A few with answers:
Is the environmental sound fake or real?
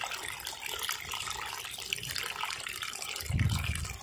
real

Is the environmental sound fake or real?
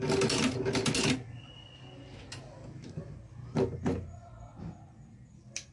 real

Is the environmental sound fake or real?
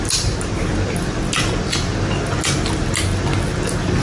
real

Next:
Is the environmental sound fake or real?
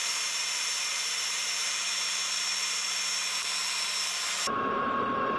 fake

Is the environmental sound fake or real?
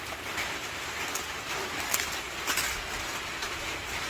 real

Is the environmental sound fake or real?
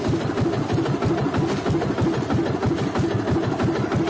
real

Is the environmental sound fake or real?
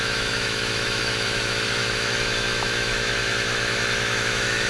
fake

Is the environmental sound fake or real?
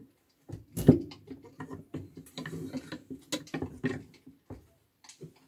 real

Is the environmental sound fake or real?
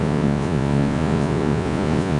fake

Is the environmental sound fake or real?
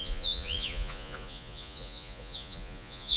fake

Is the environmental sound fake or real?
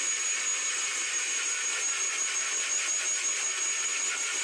real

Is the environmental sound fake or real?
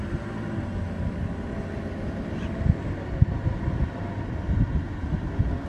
real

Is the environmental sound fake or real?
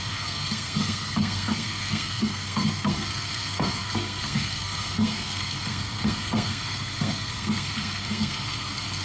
fake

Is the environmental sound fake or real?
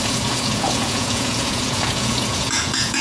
fake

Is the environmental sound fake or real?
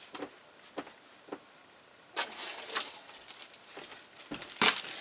real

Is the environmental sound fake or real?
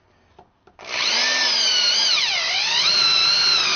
real